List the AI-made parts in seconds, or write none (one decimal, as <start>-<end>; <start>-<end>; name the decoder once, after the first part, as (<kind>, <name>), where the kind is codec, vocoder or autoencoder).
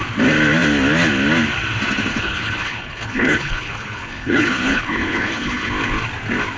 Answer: 2.1-5.7 (codec, HILCodec)